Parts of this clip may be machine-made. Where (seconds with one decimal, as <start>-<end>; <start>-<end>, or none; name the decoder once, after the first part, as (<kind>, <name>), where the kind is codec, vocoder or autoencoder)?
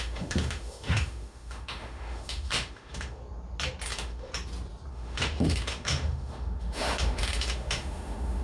0.0-3.2 (autoencoder, DAC-VAE); 3.9-4.3; 4.9-8.4